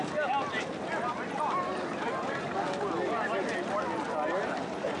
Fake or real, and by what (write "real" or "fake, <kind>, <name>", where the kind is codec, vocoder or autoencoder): real